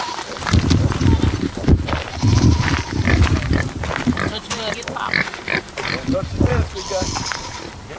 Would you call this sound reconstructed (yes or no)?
yes